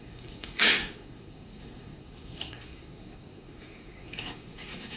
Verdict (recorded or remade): remade